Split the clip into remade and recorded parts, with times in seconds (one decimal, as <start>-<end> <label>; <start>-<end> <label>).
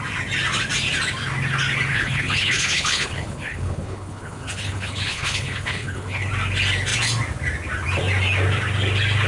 0.0-1.9 recorded; 1.9-6.3 remade; 6.3-9.3 recorded